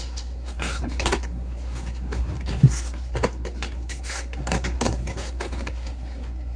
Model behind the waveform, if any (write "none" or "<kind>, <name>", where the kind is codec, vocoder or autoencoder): codec, SNAC